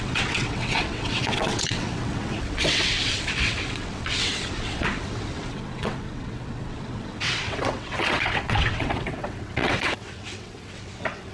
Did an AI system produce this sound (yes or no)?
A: yes